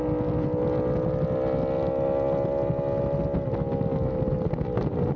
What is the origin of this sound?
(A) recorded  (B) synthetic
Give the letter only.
A